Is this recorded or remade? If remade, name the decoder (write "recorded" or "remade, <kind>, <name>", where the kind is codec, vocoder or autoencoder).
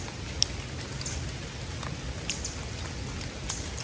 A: recorded